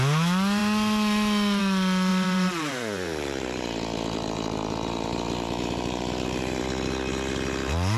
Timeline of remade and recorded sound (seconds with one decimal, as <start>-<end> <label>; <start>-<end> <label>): 0.0-2.1 recorded; 2.1-6.6 remade; 6.6-8.0 recorded